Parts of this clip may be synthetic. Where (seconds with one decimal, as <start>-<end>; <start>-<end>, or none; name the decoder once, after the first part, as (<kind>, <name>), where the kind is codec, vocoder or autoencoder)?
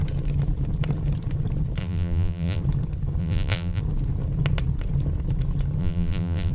1.8-2.6 (vocoder, BigVGAN v2); 3.2-3.8; 5.8-6.5